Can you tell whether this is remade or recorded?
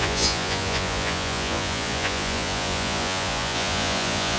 remade